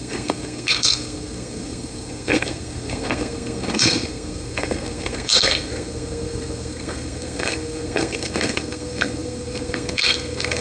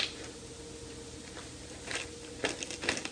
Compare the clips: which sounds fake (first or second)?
first